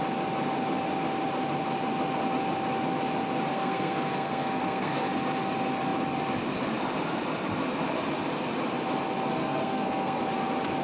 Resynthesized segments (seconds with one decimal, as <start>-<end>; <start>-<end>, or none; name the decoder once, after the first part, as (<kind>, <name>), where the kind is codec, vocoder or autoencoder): 3.5-5.0 (codec, SNAC); 9.3-10.2